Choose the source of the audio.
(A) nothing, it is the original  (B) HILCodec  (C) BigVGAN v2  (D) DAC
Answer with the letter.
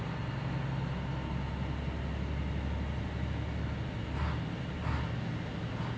A